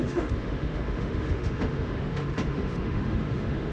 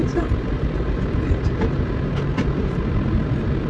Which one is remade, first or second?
first